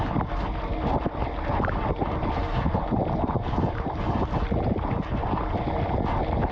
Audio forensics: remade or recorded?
recorded